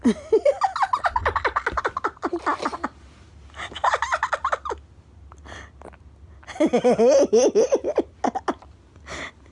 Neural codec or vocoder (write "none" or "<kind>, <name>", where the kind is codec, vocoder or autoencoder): none